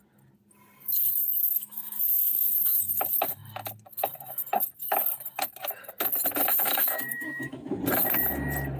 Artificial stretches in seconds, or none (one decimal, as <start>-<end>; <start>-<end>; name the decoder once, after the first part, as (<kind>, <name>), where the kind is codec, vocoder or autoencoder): 1.4-2.9 (autoencoder, DAC-VAE); 6.5-7.8